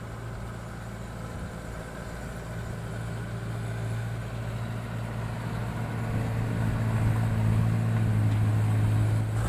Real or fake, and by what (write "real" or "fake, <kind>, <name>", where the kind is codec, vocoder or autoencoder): real